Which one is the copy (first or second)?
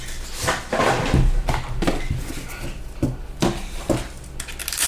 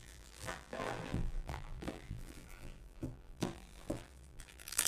second